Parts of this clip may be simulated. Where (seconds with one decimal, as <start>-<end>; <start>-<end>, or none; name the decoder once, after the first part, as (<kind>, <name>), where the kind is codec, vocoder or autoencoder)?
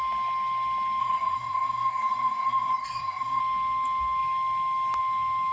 1.0-3.4 (codec, SNAC)